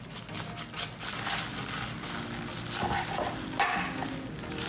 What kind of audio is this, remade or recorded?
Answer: recorded